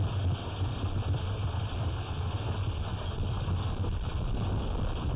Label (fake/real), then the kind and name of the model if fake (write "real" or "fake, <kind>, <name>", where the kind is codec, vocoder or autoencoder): real